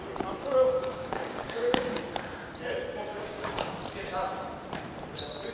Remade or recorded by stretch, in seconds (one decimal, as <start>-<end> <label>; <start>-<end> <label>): 0.0-0.4 recorded; 0.4-2.0 remade; 2.0-3.1 recorded; 3.1-3.7 remade; 3.7-5.5 recorded